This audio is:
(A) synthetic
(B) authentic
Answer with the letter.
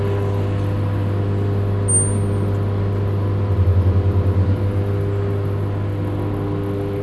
B